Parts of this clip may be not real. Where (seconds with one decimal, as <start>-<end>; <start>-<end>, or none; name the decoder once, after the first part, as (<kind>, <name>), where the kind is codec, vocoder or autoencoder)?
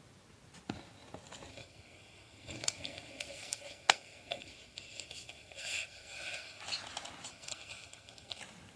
1.5-6.6 (codec, SNAC); 7.3-8.4